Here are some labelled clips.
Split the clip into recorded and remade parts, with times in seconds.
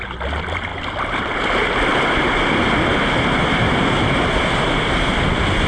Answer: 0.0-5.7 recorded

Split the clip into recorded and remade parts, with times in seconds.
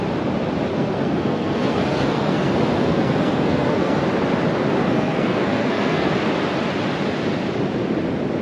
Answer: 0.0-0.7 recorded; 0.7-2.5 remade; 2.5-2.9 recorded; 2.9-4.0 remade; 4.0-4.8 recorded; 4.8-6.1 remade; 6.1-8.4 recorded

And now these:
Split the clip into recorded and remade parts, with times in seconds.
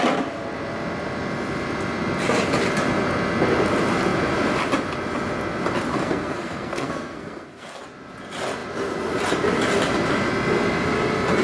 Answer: 0.0-5.9 recorded; 5.9-7.8 remade; 7.8-11.4 recorded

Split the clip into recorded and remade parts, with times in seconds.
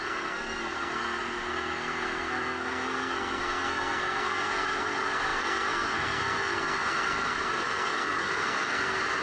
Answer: 0.0-9.2 remade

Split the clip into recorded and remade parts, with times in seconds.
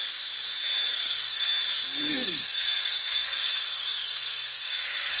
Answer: 0.0-0.9 recorded; 0.9-1.5 remade; 1.5-2.1 recorded; 2.1-5.2 remade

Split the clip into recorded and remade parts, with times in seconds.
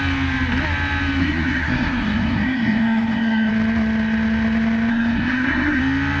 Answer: 0.0-1.2 recorded; 1.2-3.5 remade; 3.5-4.9 recorded; 4.9-5.8 remade; 5.8-6.2 recorded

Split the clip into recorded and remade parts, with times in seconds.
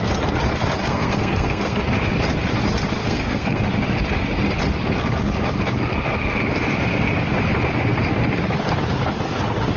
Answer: 0.0-0.8 recorded; 0.8-1.8 remade; 1.8-3.0 recorded; 3.0-3.6 remade; 3.6-9.8 recorded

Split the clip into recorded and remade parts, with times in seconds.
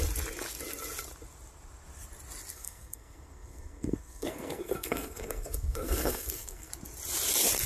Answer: 0.0-2.5 recorded; 2.5-6.7 remade; 6.7-7.7 recorded